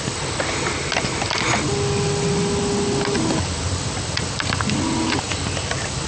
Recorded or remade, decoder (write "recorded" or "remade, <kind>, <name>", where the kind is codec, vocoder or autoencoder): recorded